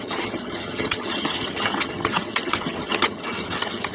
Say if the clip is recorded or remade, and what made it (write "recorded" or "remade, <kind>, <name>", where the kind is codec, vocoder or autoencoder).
remade, vocoder, HiFi-GAN